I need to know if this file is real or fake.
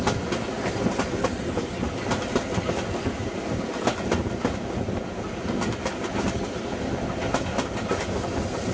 real